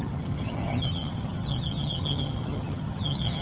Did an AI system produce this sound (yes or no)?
yes